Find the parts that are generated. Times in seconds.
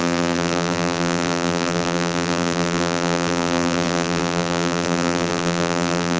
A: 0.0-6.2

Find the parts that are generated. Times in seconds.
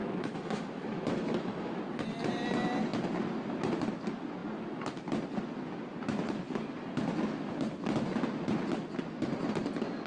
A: 0.0-1.8